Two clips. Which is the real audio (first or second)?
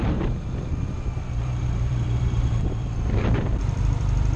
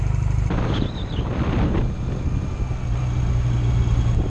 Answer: second